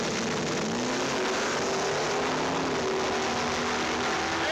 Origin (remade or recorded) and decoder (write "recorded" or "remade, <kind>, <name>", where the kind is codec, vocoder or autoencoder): recorded